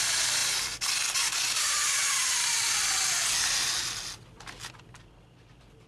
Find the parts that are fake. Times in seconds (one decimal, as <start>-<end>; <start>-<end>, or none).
none